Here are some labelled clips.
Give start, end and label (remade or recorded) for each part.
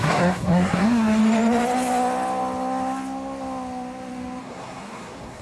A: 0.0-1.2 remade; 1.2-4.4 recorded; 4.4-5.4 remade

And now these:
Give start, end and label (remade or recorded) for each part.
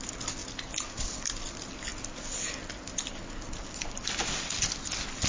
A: 0.0-5.3 recorded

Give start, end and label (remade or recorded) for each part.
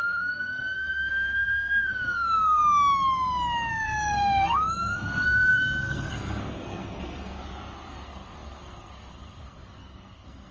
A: 0.0-2.6 remade; 2.6-3.7 recorded; 3.7-7.4 remade; 7.4-7.9 recorded; 7.9-10.5 remade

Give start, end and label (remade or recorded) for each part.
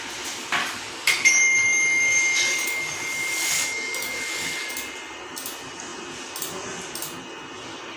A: 0.0-0.6 recorded; 0.6-4.7 remade; 4.7-8.0 recorded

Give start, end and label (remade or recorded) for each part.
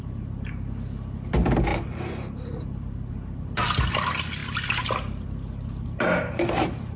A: 0.0-7.0 recorded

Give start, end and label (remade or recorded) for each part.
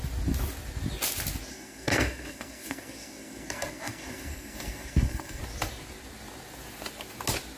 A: 0.0-1.5 recorded; 1.5-5.4 remade; 5.4-7.6 recorded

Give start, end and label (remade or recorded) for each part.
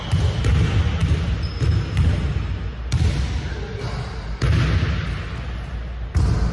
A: 0.0-6.5 recorded